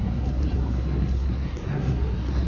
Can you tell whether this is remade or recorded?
remade